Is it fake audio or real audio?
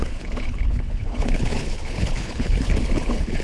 fake